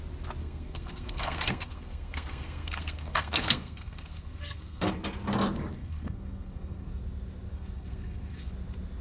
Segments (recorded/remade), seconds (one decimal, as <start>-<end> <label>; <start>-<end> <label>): 0.0-0.4 recorded; 0.4-4.9 remade; 4.9-5.8 recorded; 5.8-7.0 remade; 7.0-7.5 recorded; 7.5-8.5 remade; 8.5-9.0 recorded